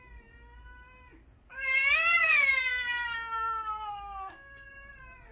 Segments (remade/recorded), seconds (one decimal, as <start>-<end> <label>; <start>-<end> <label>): 0.0-1.5 recorded; 1.5-4.7 remade; 4.7-5.3 recorded